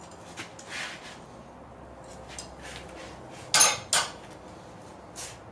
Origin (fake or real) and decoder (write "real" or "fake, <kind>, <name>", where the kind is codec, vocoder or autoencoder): real